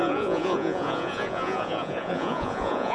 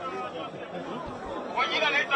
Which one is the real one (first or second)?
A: second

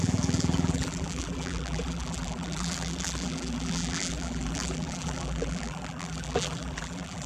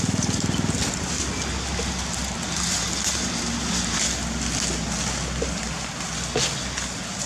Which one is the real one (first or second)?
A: second